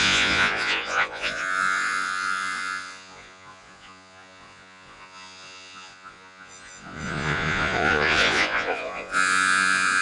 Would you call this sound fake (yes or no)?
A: yes